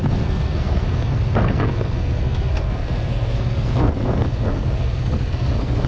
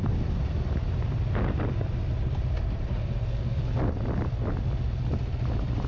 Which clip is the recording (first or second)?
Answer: second